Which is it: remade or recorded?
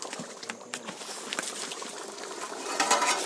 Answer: recorded